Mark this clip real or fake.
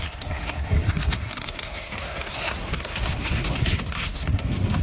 fake